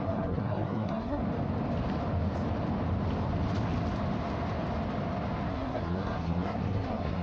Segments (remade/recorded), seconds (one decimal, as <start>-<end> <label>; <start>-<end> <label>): 0.0-1.2 remade; 1.2-5.5 recorded; 5.5-7.2 remade